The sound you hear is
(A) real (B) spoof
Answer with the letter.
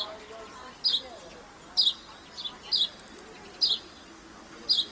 A